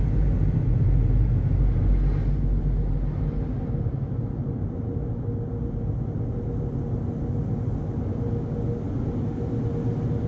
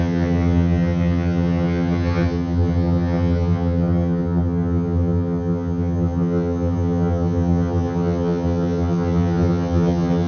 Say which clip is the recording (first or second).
first